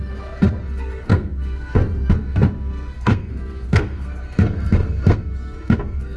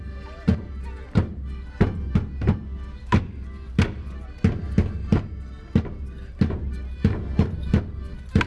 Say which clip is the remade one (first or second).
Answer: first